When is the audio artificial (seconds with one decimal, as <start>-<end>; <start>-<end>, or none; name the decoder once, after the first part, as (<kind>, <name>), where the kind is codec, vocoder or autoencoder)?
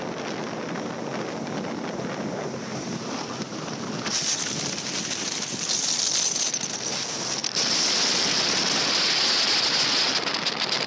2.7-6.5 (vocoder, BigVGAN v2); 7.4-8.9